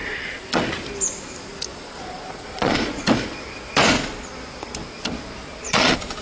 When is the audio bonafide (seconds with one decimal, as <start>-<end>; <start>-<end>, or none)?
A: 0.6-1.7; 3.0-5.4